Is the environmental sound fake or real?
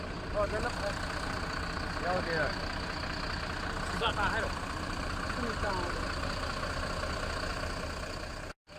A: real